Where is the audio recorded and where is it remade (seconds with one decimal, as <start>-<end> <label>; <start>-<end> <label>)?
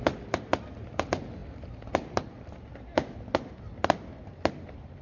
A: 0.0-5.0 recorded